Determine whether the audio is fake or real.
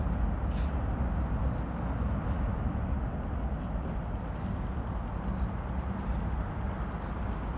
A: real